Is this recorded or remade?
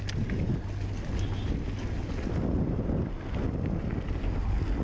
recorded